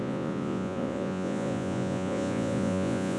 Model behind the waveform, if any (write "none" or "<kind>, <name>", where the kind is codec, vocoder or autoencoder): vocoder, Vocos